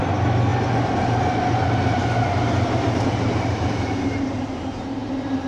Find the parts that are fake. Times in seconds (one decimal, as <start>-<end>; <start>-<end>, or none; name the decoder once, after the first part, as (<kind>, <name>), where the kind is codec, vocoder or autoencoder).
2.0-5.5 (vocoder, BigVGAN v2)